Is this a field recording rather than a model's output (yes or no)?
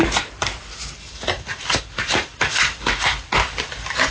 yes